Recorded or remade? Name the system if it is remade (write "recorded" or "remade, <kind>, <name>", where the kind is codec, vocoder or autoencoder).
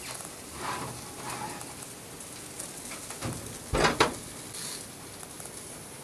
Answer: recorded